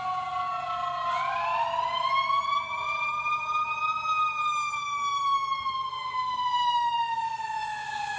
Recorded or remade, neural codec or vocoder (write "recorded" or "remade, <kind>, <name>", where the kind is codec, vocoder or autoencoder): recorded